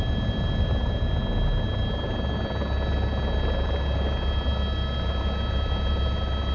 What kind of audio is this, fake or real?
real